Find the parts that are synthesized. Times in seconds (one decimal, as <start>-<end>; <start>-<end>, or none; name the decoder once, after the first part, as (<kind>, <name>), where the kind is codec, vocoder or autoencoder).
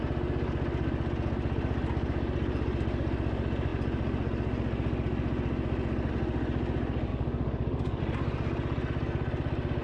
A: 7.1-8.0 (codec, DAC)